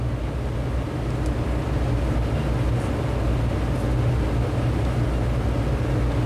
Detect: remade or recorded recorded